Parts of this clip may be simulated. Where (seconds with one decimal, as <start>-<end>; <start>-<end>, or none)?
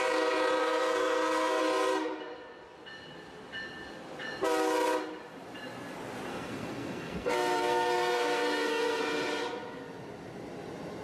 0.6-1.6; 6.3-9.0